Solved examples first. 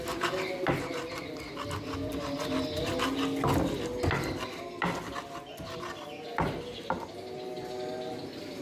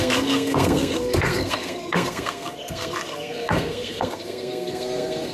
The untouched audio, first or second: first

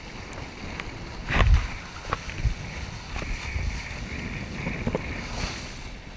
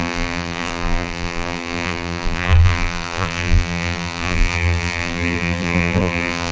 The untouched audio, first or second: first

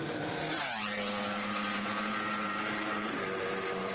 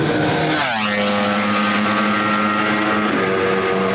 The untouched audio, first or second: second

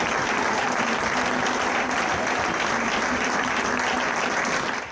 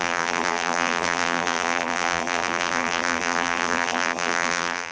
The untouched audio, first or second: first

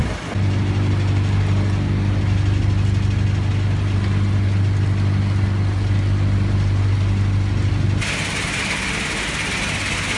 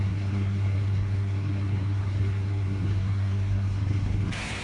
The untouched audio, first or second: first